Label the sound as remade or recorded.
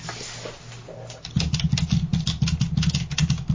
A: recorded